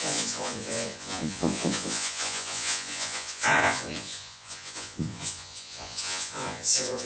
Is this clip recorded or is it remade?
remade